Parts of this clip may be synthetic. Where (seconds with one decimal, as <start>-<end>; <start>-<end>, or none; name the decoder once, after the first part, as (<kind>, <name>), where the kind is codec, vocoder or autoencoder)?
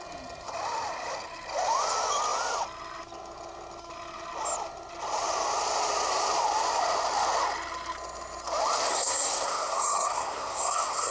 8.9-11.1 (codec, SNAC)